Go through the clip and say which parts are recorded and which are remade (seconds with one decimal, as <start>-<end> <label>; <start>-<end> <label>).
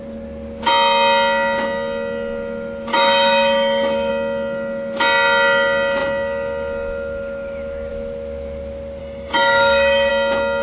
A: 0.0-2.9 recorded; 2.9-4.1 remade; 4.1-9.0 recorded; 9.0-10.1 remade; 10.1-10.6 recorded